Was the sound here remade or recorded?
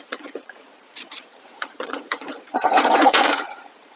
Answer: remade